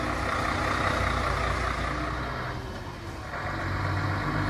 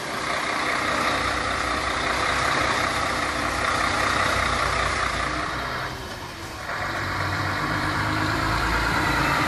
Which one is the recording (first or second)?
first